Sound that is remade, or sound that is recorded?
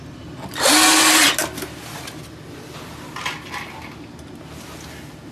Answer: recorded